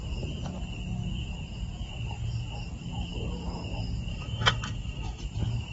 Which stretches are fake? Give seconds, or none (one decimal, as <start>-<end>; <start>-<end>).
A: 4.1-5.2